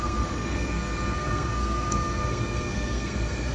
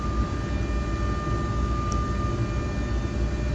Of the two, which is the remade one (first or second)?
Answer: first